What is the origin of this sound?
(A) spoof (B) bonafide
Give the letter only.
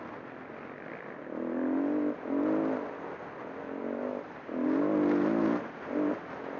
B